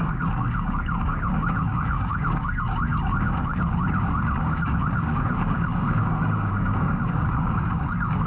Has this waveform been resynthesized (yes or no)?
yes